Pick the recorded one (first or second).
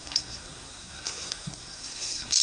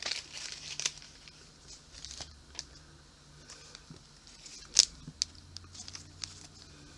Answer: second